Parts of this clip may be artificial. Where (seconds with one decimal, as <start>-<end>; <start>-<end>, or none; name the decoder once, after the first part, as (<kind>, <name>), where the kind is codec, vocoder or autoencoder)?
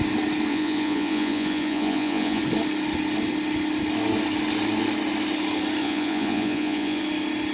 0.5-2.4 (vocoder, Vocos); 5.8-7.0